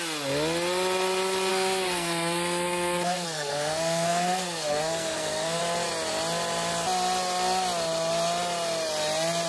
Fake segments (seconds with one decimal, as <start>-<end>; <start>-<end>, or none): 1.5-5.6